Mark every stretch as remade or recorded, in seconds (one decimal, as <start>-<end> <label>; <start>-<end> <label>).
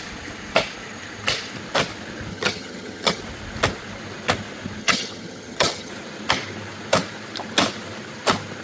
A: 0.0-2.3 recorded; 2.3-3.2 remade; 3.2-4.8 recorded; 4.8-5.9 remade; 5.9-8.6 recorded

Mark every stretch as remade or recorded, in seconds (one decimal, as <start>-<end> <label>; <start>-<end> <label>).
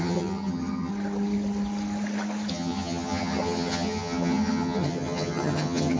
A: 0.0-0.9 remade; 0.9-2.5 recorded; 2.5-6.0 remade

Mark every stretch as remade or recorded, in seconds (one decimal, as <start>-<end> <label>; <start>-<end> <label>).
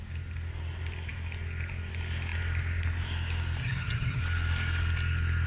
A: 0.0-3.6 recorded; 3.6-4.2 remade; 4.2-5.5 recorded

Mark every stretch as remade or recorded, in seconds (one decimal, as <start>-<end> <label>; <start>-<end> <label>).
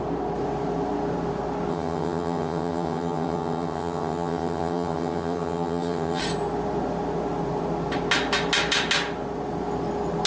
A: 0.0-1.7 recorded; 1.7-6.2 remade; 6.2-10.3 recorded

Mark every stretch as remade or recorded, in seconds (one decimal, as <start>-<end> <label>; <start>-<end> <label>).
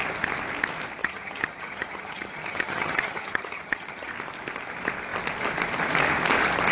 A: 0.0-1.0 recorded; 1.0-4.1 remade; 4.1-6.7 recorded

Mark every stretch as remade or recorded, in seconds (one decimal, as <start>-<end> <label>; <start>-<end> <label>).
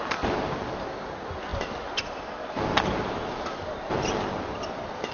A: 0.0-5.1 recorded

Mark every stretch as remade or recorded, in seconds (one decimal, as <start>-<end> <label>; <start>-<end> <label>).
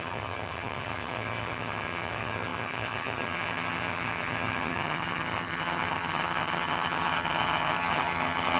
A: 0.0-8.6 remade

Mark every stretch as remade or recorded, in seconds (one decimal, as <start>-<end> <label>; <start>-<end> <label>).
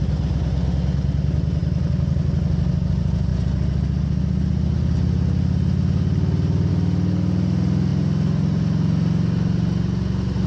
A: 0.0-10.5 recorded